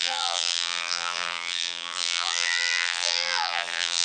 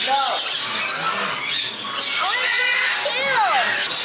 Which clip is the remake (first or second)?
first